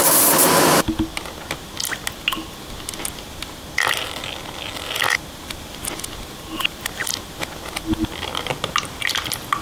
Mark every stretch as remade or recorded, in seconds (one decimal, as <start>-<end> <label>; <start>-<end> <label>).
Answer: 0.0-9.6 recorded